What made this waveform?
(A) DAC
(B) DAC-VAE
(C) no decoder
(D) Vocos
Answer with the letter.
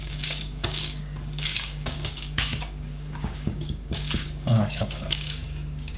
A